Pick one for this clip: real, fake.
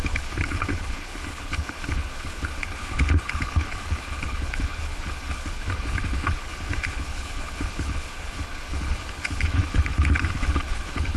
fake